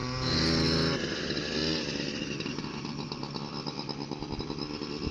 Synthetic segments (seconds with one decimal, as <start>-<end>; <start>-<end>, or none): none